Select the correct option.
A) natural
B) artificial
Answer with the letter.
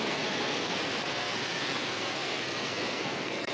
B